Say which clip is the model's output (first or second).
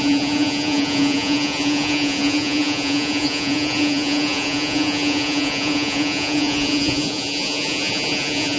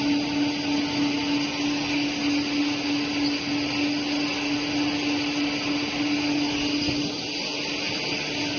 first